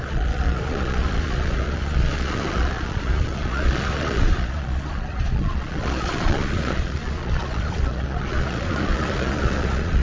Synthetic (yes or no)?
yes